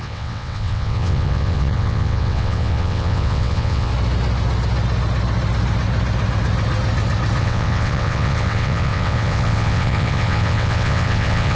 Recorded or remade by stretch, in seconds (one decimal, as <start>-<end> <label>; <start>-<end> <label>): 0.0-3.9 remade; 3.9-7.4 recorded; 7.4-11.6 remade